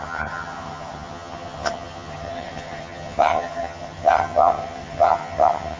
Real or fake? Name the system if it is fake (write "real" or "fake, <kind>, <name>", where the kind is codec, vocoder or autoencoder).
fake, vocoder, HiFi-GAN